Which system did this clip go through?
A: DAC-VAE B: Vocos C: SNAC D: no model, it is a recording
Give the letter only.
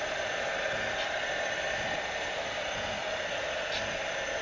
D